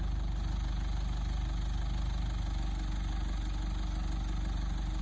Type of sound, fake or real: real